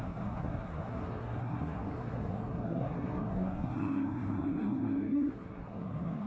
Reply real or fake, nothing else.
fake